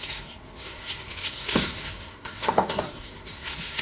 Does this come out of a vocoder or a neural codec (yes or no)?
yes